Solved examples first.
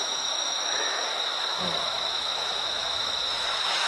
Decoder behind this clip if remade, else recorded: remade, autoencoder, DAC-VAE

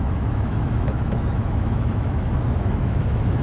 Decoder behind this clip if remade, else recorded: remade, autoencoder, DAC-VAE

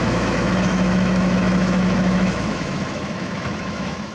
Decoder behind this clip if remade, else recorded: remade, autoencoder, DAC-VAE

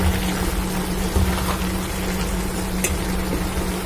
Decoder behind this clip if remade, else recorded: recorded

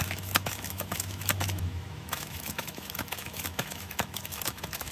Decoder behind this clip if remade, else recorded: remade, autoencoder, DAC-VAE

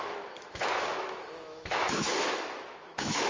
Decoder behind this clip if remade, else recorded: remade, autoencoder, DAC-VAE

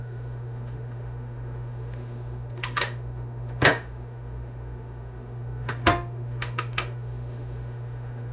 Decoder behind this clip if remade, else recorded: remade, autoencoder, DAC-VAE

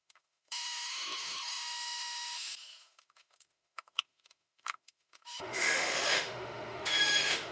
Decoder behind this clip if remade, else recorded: remade, autoencoder, DAC-VAE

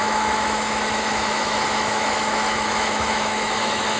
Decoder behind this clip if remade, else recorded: remade, autoencoder, DAC-VAE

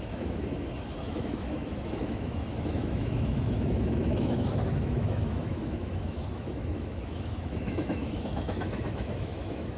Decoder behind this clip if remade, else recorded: remade, autoencoder, DAC-VAE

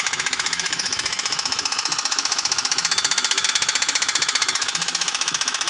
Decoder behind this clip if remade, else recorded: remade, autoencoder, DAC-VAE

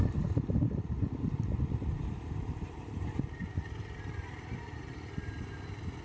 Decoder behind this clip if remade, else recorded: recorded